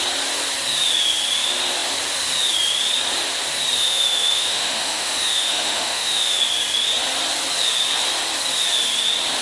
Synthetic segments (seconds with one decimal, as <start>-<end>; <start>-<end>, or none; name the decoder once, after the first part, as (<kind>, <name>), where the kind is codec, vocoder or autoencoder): 3.8-6.4 (autoencoder, DAC-VAE)